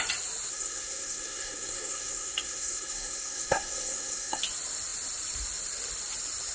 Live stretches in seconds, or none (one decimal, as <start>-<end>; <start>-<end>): 0.0-0.5; 4.4-6.5